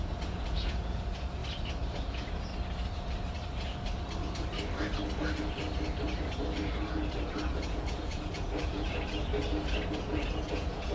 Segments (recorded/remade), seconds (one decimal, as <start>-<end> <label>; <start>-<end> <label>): 0.0-1.4 remade; 1.4-2.0 recorded; 2.0-2.5 remade; 2.5-6.7 recorded; 6.7-9.3 remade; 9.3-9.9 recorded; 9.9-10.9 remade